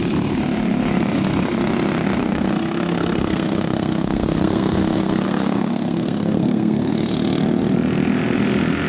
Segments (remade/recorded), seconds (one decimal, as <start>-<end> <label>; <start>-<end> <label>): 0.0-2.2 recorded; 2.2-6.9 remade; 6.9-8.9 recorded

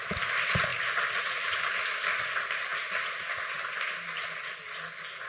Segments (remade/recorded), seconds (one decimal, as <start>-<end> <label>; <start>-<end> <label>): 0.0-5.3 recorded

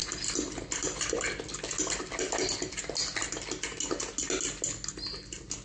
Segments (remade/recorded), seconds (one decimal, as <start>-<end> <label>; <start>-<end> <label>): 0.0-5.6 recorded

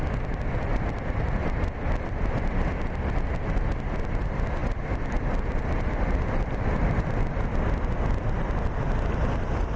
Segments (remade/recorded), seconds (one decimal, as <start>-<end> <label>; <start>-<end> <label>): 0.0-9.8 recorded